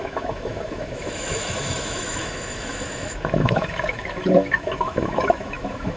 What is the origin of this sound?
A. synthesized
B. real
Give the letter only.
A